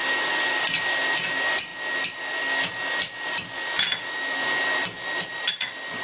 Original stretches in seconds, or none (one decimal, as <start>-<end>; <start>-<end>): 0.0-6.0